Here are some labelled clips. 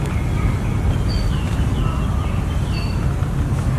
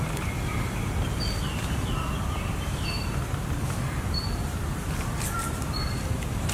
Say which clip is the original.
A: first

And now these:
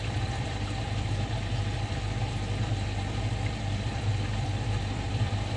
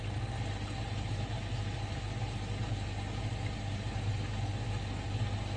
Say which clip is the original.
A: second